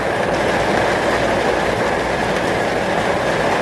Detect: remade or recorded recorded